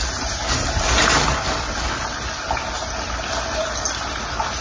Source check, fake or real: real